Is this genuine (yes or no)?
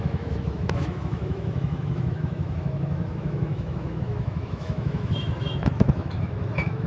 no